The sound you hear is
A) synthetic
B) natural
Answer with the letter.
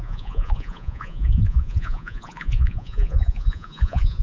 A